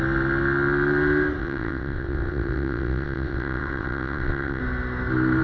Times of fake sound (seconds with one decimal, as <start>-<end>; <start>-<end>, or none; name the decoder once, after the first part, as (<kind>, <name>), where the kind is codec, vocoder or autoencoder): 1.4-4.6 (vocoder, WaveNeXt)